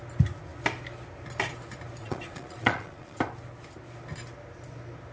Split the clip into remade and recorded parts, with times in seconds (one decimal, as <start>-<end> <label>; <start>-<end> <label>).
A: 0.0-2.0 recorded; 2.0-3.2 remade; 3.2-5.1 recorded